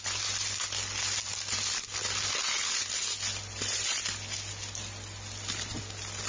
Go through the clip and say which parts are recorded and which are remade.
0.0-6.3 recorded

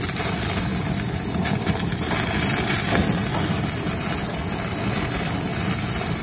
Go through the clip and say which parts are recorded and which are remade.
0.0-6.2 recorded

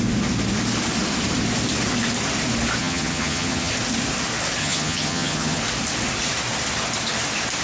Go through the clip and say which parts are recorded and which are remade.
0.0-2.8 recorded; 2.8-3.7 remade; 3.7-4.6 recorded; 4.6-5.6 remade; 5.6-7.6 recorded

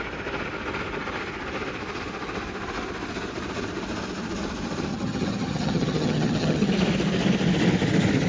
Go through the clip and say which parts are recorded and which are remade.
0.0-4.9 recorded; 4.9-6.7 remade; 6.7-8.3 recorded

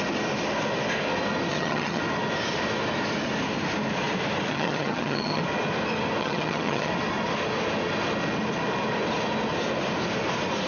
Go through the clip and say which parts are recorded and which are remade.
0.0-1.5 recorded; 1.5-2.0 remade; 2.0-4.5 recorded; 4.5-5.4 remade; 5.4-6.2 recorded; 6.2-6.9 remade; 6.9-10.7 recorded

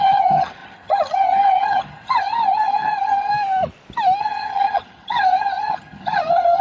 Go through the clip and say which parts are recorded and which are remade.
0.0-3.3 remade; 3.3-4.2 recorded; 4.2-6.6 remade

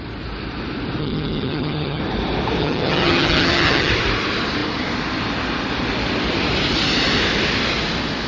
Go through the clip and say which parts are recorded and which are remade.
0.0-1.0 recorded; 1.0-2.0 remade; 2.0-2.6 recorded; 2.6-3.9 remade; 3.9-8.3 recorded